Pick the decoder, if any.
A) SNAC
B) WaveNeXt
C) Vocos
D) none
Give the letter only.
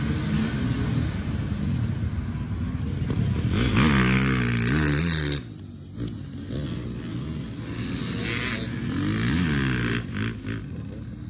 D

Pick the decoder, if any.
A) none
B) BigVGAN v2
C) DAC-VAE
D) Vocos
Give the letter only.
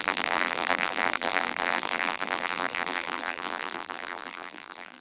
B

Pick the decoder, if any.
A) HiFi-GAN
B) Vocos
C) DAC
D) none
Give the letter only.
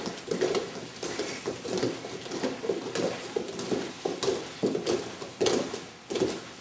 D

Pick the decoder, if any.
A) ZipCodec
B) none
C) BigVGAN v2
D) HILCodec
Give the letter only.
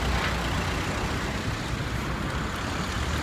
B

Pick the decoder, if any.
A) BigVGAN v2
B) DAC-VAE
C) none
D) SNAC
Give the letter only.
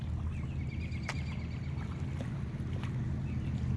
C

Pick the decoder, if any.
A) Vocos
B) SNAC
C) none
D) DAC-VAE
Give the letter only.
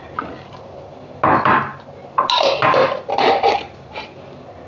C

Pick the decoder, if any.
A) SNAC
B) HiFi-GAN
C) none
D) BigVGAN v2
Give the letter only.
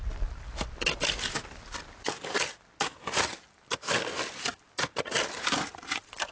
C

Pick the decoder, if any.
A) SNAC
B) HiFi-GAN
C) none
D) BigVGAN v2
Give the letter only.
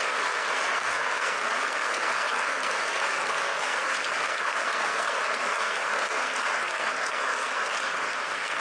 A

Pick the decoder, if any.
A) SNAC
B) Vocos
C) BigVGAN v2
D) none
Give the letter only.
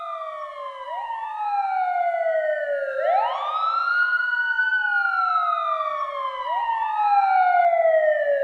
D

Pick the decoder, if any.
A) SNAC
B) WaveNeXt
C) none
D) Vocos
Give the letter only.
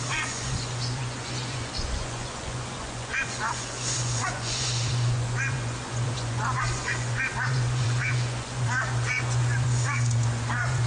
D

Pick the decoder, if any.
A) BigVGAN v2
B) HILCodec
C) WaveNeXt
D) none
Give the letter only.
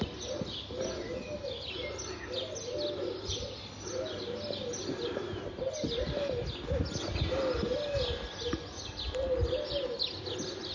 D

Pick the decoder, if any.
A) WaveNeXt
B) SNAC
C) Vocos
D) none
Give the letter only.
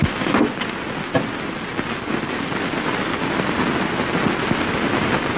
D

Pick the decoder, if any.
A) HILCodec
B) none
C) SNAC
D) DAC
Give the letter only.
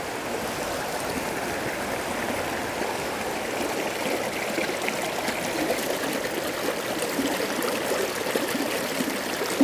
B